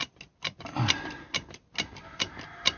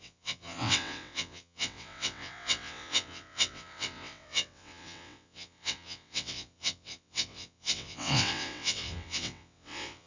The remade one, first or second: second